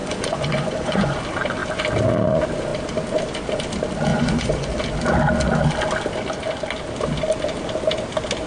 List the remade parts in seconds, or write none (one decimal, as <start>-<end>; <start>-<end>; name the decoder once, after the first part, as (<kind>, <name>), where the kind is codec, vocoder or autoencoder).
0.0-1.2 (vocoder, Vocos); 4.1-4.8